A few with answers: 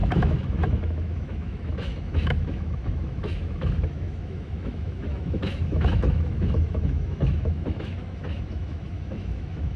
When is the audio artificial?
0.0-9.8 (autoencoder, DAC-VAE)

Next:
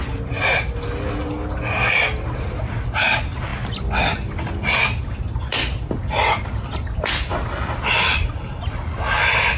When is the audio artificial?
none

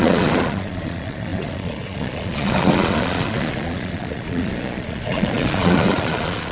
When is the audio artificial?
0.0-6.5 (vocoder, Vocos)

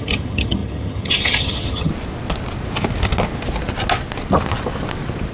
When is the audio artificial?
0.0-1.9 (vocoder, HiFi-GAN)